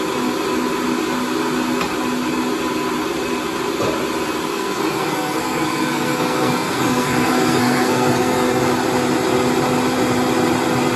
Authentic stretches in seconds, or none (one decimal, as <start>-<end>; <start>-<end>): 0.0-4.5; 8.6-11.0